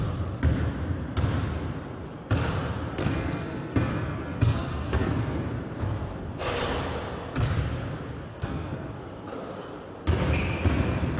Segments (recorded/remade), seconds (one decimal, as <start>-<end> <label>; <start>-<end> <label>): 0.0-3.0 recorded; 3.0-5.7 remade; 5.7-8.3 recorded; 8.3-8.9 remade; 8.9-11.2 recorded